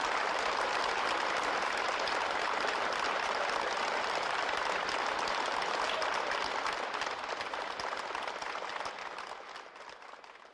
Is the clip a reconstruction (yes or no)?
no